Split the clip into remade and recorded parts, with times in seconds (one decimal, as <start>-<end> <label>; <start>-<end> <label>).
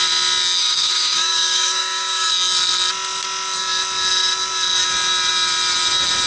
0.0-0.6 recorded; 0.6-2.3 remade; 2.3-6.3 recorded